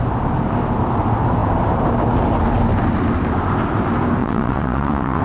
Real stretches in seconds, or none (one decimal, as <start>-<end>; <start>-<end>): 0.0-4.2